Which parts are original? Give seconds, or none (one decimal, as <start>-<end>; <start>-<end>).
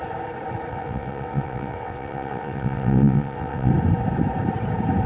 0.0-0.7; 3.7-5.1